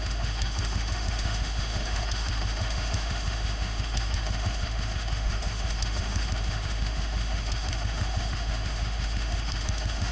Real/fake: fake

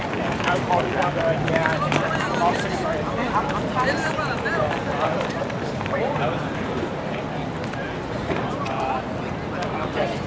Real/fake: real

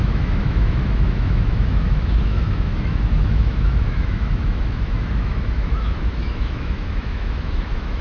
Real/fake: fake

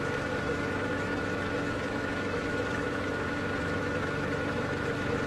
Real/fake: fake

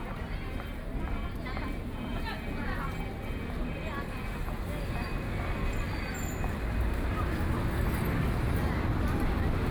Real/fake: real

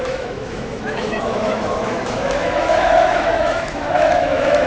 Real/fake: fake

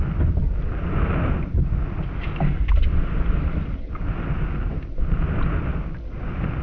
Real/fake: real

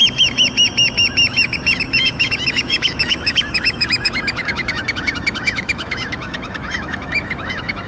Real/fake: fake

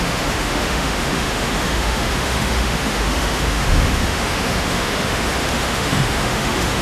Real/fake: fake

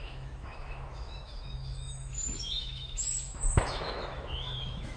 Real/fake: fake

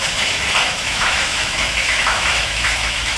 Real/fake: fake